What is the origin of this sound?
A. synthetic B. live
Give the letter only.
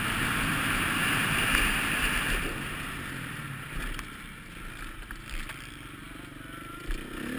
B